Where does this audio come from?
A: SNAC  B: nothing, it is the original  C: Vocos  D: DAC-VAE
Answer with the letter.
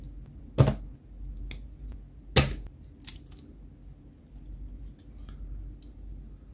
B